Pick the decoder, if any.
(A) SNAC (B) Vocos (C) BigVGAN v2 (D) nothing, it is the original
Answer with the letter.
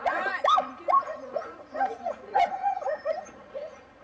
B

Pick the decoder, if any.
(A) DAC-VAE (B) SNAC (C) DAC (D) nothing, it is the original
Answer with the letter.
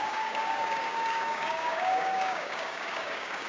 C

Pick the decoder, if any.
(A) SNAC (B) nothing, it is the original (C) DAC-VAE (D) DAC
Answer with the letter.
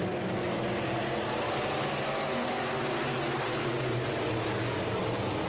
B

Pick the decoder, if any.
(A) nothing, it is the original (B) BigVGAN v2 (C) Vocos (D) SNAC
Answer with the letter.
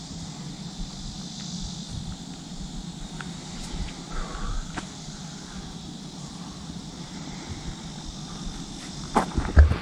B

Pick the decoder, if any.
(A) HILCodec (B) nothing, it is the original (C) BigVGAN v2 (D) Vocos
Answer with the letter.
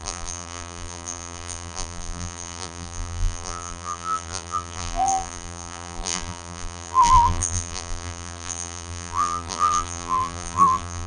C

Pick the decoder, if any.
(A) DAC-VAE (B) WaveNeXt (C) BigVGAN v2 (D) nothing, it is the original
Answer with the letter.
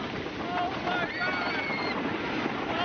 D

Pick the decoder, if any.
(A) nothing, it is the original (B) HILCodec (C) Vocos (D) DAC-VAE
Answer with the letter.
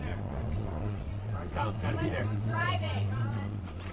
C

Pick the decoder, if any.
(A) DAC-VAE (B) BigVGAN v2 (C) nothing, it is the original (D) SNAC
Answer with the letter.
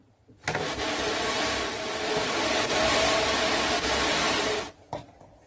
C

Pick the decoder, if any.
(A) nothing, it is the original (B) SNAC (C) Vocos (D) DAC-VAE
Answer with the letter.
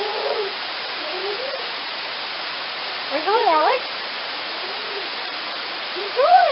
C